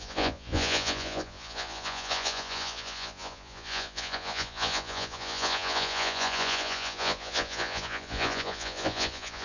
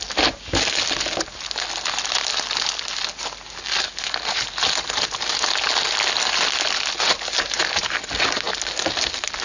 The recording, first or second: second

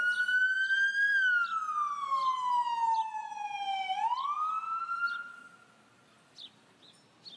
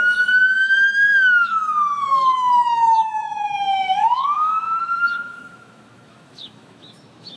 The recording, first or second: first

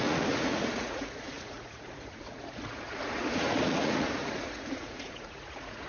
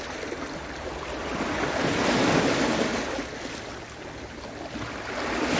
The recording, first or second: second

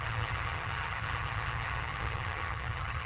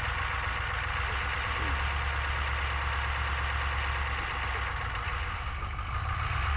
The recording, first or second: second